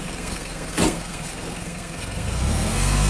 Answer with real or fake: fake